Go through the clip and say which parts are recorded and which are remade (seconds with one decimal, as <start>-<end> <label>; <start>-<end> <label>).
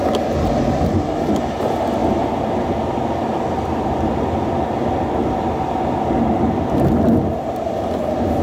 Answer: 0.0-8.4 recorded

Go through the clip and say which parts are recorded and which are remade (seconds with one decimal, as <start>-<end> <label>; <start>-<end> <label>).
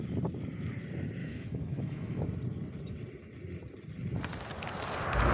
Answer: 0.0-1.2 recorded; 1.2-2.2 remade; 2.2-5.3 recorded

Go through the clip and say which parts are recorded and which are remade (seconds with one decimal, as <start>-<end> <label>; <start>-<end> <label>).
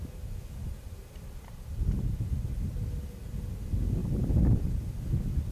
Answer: 0.0-5.5 recorded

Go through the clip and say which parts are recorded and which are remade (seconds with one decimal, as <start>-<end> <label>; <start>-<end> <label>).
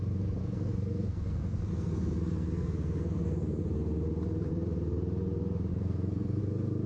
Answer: 0.0-0.4 recorded; 0.4-3.6 remade; 3.6-5.7 recorded; 5.7-6.4 remade; 6.4-6.9 recorded